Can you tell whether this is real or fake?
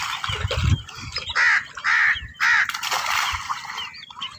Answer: real